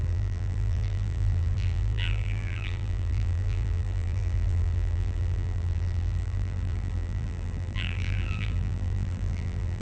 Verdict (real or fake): fake